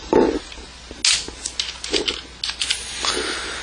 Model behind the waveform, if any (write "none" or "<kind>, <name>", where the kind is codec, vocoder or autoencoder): none